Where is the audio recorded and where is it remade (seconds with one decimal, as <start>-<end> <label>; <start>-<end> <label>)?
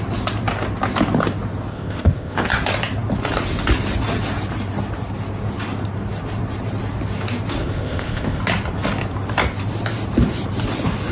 0.0-1.7 recorded; 1.7-2.5 remade; 2.5-7.6 recorded; 7.6-8.4 remade; 8.4-11.1 recorded